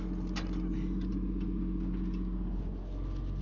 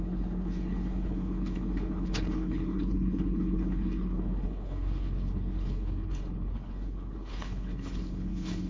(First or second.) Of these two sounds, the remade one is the second